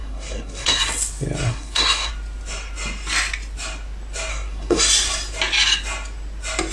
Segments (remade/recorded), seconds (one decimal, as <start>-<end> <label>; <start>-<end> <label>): 0.0-0.8 remade; 0.8-1.5 recorded; 1.5-2.1 remade; 2.1-4.3 recorded; 4.3-4.8 remade; 4.8-6.7 recorded

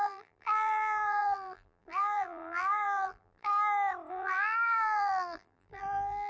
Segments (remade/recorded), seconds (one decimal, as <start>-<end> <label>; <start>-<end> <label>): 0.0-3.5 remade; 3.5-4.1 recorded; 4.1-6.3 remade

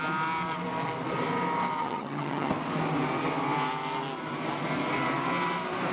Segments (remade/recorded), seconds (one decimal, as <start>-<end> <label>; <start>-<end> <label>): 0.0-1.8 recorded; 1.8-2.5 remade; 2.5-5.9 recorded

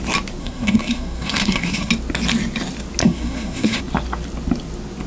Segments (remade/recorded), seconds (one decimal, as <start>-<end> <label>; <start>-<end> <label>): 0.0-0.4 recorded; 0.4-1.9 remade; 1.9-3.0 recorded; 3.0-3.8 remade; 3.8-5.1 recorded

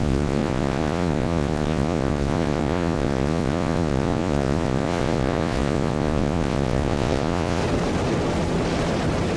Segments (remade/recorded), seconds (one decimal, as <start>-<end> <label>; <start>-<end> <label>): 0.0-7.6 remade; 7.6-9.4 recorded

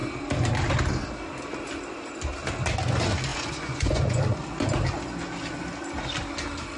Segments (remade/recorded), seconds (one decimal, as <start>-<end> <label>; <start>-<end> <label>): 0.0-3.3 recorded; 3.3-4.2 remade; 4.2-6.8 recorded